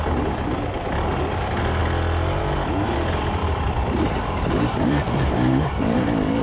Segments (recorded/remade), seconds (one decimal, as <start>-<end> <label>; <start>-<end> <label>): 0.0-3.4 recorded; 3.4-5.7 remade; 5.7-6.4 recorded